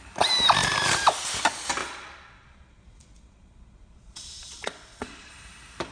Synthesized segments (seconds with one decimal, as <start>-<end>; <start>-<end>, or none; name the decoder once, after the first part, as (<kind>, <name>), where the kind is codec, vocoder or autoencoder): 1.8-5.3 (vocoder, Vocos)